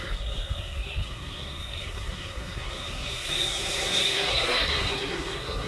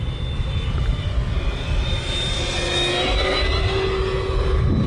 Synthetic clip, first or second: first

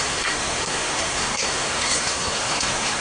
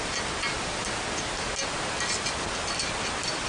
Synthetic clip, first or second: first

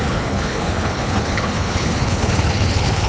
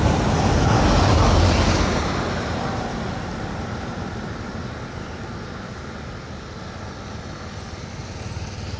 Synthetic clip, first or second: first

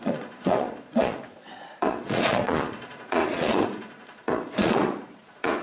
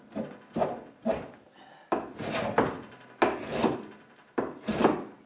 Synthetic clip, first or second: first